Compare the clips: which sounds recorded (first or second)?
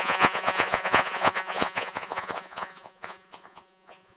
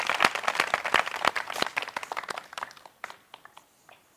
second